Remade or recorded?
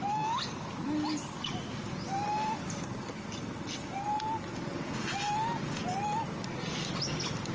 recorded